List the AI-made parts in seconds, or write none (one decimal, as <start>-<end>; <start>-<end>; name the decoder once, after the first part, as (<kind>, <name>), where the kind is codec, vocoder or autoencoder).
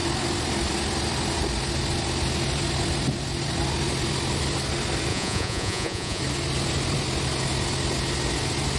5.1-6.2 (vocoder, Vocos)